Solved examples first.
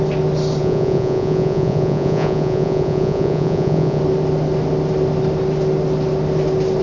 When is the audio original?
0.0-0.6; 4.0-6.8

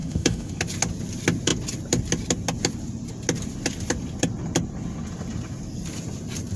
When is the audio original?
0.6-6.6

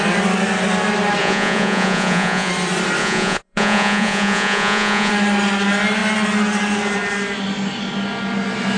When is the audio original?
0.0-1.2; 2.5-3.0; 5.1-8.8

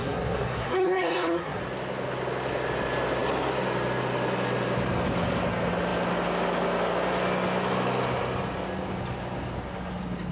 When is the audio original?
1.6-10.3

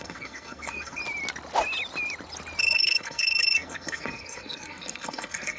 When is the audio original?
1.0-2.6

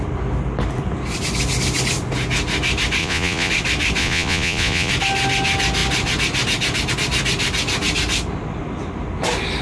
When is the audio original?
0.0-3.0; 3.5-4.0; 4.9-9.6

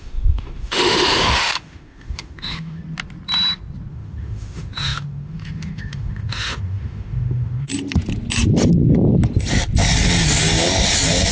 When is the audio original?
2.8-3.9; 7.7-11.3